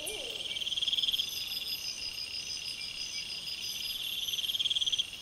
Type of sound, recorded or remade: recorded